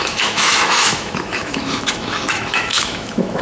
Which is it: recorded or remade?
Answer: remade